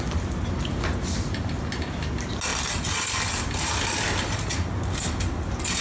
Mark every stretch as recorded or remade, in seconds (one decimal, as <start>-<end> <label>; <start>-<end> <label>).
0.0-5.8 recorded

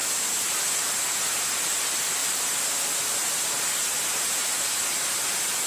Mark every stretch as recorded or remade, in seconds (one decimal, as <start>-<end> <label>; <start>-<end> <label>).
0.0-5.7 recorded

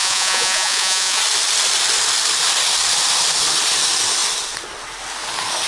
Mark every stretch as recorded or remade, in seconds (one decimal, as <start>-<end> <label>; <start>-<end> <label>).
0.0-1.2 remade; 1.2-5.7 recorded